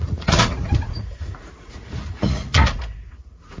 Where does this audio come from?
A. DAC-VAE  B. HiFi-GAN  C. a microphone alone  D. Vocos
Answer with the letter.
D